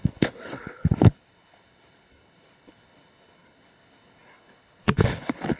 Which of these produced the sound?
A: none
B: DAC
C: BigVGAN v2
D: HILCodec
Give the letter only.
D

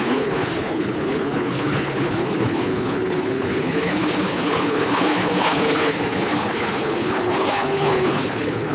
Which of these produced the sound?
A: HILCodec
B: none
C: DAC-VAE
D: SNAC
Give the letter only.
A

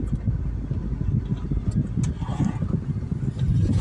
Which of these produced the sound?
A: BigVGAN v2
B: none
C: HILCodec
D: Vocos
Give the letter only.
B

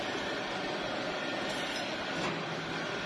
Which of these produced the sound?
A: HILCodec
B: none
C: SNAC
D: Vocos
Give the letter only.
B